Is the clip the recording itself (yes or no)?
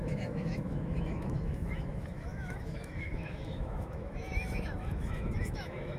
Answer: no